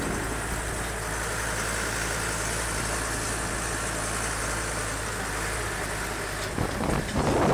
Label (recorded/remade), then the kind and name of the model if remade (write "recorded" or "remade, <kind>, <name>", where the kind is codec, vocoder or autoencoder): recorded